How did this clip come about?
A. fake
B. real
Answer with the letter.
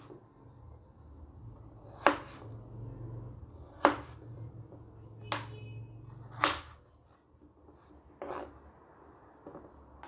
B